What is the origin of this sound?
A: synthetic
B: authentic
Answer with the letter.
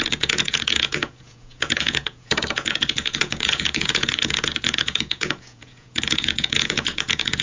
A